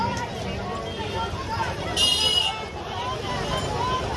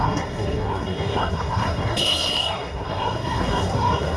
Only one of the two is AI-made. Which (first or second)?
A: second